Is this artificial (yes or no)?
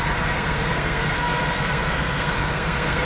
yes